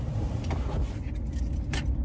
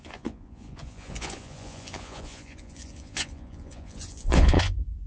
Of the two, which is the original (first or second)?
first